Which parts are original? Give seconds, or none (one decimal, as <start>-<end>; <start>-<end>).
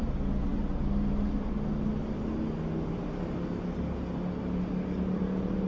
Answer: 0.0-5.7